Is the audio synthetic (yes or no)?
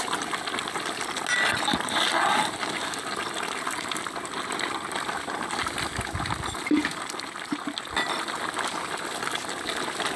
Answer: no